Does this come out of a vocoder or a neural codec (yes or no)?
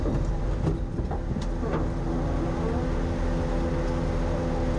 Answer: no